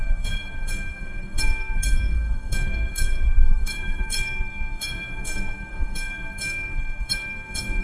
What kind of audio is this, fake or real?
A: fake